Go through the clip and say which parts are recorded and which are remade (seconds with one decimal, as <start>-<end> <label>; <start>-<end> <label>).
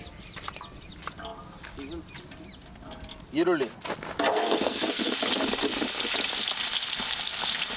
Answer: 0.0-4.3 recorded; 4.3-5.1 remade; 5.1-7.8 recorded